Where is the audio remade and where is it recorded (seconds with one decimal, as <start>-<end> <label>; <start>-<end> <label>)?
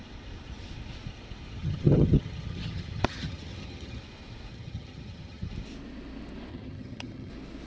0.0-1.6 recorded; 1.6-4.0 remade; 4.0-4.5 recorded; 4.5-5.5 remade; 5.5-6.5 recorded; 6.5-7.3 remade; 7.3-7.7 recorded